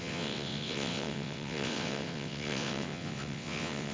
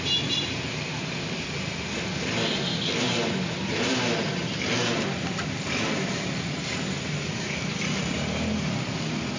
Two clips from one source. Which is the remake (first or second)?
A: first